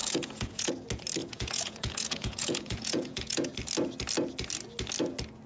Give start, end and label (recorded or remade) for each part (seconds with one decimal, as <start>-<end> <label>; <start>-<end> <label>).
0.0-0.7 remade; 0.7-1.2 recorded; 1.2-3.5 remade; 3.5-5.5 recorded

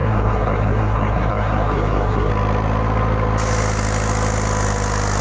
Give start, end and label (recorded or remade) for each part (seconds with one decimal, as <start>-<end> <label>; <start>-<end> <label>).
0.0-2.3 remade; 2.3-5.2 recorded

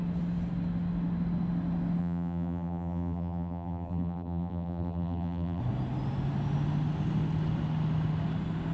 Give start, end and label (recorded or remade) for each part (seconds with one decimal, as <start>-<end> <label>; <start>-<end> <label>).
0.0-2.0 recorded; 2.0-5.6 remade; 5.6-8.7 recorded

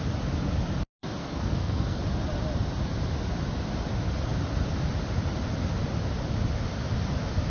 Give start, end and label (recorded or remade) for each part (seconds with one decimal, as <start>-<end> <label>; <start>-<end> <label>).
0.0-1.2 recorded; 1.2-2.0 remade; 2.0-7.5 recorded

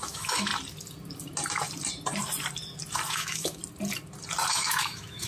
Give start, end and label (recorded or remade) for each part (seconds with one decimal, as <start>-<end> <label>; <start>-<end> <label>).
0.0-0.5 remade; 0.5-3.1 recorded; 3.1-3.6 remade; 3.6-4.5 recorded; 4.5-5.3 remade

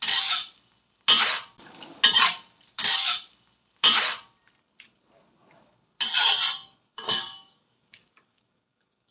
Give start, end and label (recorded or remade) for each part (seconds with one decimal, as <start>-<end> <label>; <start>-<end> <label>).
0.0-0.4 remade; 0.4-2.7 recorded; 2.7-3.1 remade; 3.1-6.9 recorded; 6.9-9.1 remade

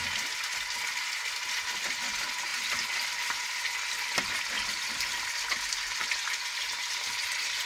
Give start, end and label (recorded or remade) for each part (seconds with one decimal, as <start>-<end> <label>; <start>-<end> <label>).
0.0-7.7 recorded

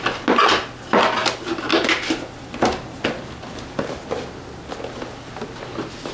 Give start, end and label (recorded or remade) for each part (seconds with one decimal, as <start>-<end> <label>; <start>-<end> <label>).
0.0-6.1 recorded